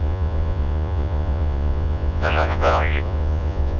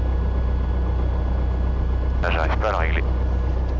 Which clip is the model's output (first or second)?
first